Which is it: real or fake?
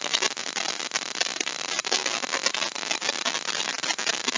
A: real